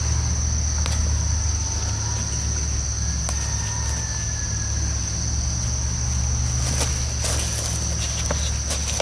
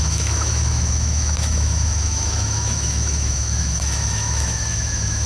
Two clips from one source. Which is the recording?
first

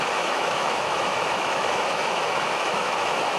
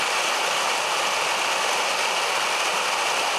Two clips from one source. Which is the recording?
second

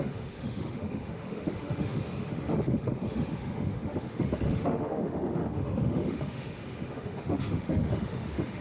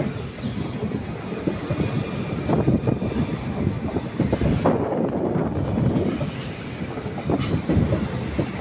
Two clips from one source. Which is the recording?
second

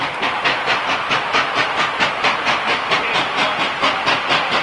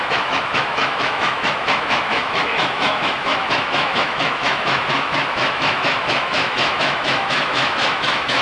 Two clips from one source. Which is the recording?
first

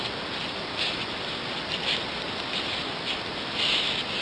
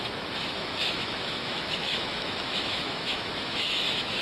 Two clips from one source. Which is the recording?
first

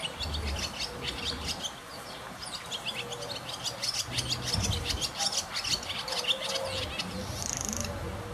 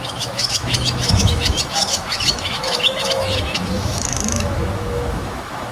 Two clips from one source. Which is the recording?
first